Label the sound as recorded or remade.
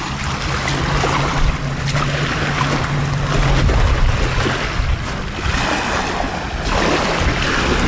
recorded